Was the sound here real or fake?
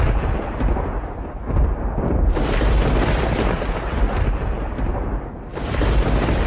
real